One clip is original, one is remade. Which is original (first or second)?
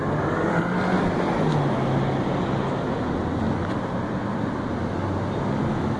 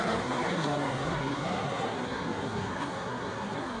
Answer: first